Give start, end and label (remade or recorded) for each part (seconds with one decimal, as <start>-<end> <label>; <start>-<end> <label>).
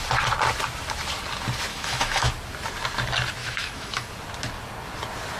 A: 0.0-1.7 recorded; 1.7-2.3 remade; 2.3-3.4 recorded; 3.4-4.1 remade; 4.1-5.4 recorded